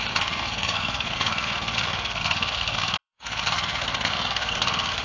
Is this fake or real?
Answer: fake